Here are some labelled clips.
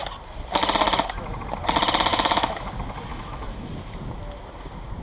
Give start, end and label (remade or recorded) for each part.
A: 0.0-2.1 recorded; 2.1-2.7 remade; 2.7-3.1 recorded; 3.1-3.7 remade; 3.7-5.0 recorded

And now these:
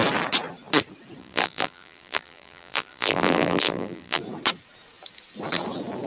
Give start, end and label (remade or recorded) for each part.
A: 0.0-1.2 recorded; 1.2-4.2 remade; 4.2-6.1 recorded

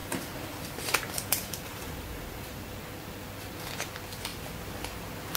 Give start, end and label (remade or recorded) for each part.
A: 0.0-2.6 remade; 2.6-5.4 recorded

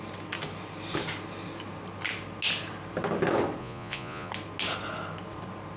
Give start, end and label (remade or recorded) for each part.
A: 0.0-3.6 recorded; 3.6-4.3 remade; 4.3-5.8 recorded

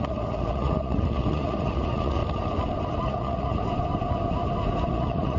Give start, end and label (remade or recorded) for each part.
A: 0.0-2.2 remade; 2.2-2.9 recorded; 2.9-3.6 remade; 3.6-4.9 recorded; 4.9-5.4 remade

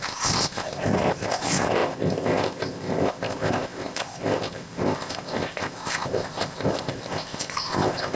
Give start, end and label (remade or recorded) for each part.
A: 0.0-8.2 remade